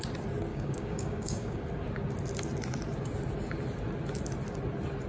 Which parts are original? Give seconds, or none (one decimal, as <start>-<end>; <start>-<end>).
0.0-0.5; 1.6-5.1